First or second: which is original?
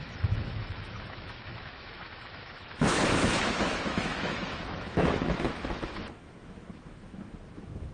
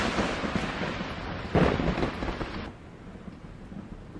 second